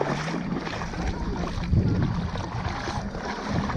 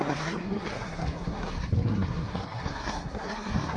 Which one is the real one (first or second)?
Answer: first